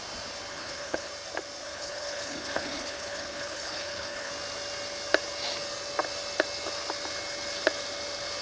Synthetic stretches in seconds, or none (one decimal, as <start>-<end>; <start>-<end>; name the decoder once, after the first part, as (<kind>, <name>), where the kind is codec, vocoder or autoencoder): 0.5-1.1 (codec, HILCodec); 1.6-4.3